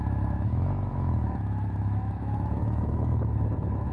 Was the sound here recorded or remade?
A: remade